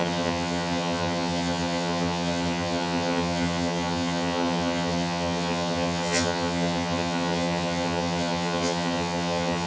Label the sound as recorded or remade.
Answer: remade